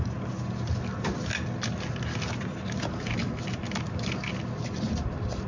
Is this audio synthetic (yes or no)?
no